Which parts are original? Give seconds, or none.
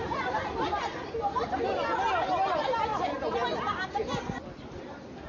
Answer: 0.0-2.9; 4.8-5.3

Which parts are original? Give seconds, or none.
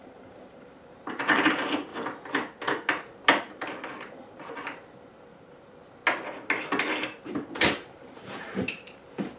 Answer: 1.9-3.5; 6.0-7.2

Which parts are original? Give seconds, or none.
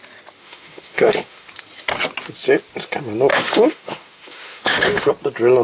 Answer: 0.0-0.4; 1.5-3.3; 5.1-5.6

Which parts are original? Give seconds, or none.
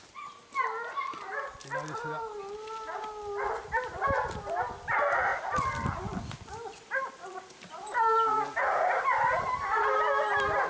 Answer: 0.0-10.7